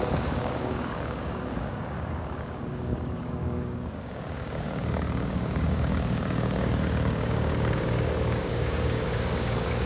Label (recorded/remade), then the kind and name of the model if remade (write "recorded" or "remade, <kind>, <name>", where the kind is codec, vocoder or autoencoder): remade, codec, DAC